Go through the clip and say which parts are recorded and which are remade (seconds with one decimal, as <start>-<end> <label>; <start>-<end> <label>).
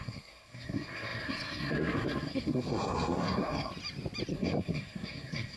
0.0-3.7 remade; 3.7-4.3 recorded; 4.3-5.6 remade